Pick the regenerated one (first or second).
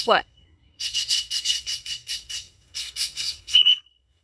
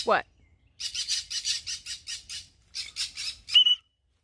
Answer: first